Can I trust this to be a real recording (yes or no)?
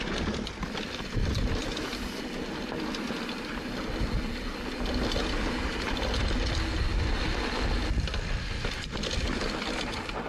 yes